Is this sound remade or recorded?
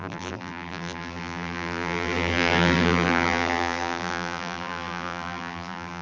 remade